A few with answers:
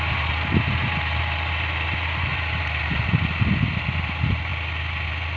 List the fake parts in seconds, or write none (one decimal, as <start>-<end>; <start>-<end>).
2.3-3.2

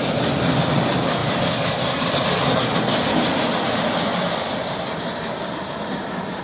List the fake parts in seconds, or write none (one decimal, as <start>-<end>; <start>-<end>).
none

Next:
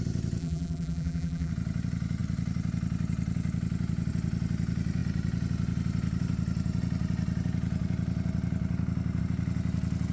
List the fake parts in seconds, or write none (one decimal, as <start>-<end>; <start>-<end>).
0.4-1.5

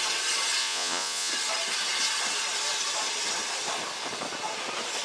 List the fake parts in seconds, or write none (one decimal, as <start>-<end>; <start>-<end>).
0.6-1.3

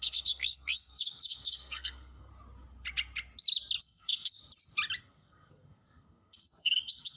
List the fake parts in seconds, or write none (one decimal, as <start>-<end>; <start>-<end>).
0.0-2.3; 3.8-4.4; 5.0-7.2